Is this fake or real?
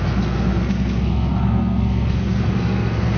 fake